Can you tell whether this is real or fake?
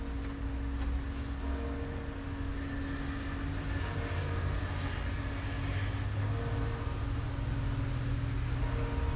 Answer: real